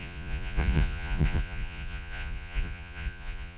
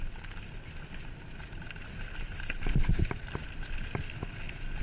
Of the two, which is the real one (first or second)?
second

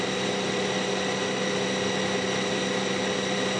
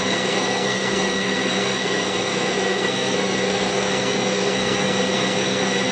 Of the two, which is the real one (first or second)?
first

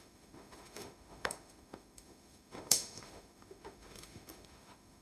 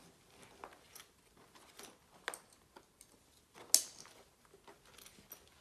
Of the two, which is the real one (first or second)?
second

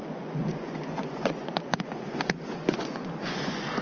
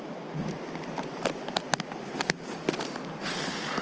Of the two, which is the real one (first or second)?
second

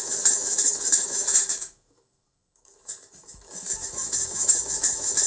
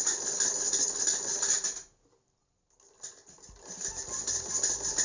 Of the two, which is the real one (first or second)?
second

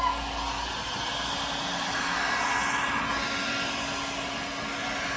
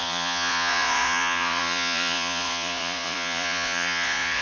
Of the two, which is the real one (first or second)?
first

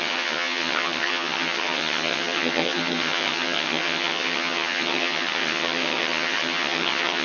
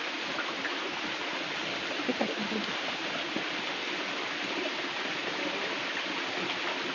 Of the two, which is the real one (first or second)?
second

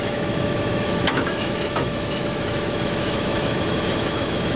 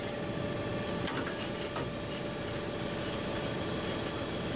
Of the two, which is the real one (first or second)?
second